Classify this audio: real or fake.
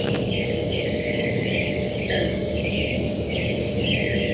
fake